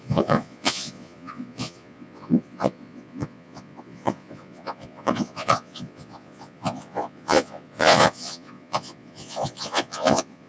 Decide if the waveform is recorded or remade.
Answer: remade